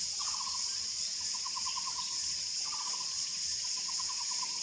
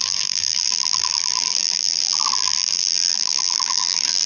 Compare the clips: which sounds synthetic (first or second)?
second